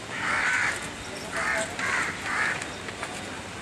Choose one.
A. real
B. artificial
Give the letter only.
A